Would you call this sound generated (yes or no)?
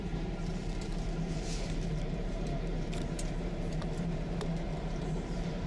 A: yes